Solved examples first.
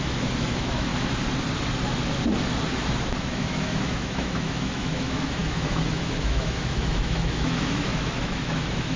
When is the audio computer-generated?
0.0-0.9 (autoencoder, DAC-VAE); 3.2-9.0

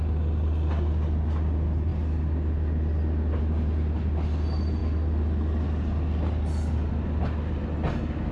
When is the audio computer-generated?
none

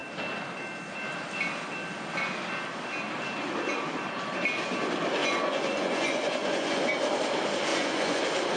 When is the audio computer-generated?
5.2-6.9 (vocoder, Vocos); 7.7-8.2